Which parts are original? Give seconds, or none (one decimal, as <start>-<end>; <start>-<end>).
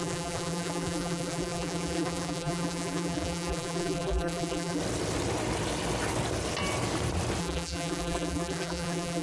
4.8-7.4